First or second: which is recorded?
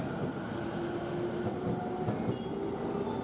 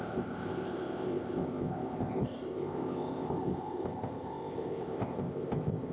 first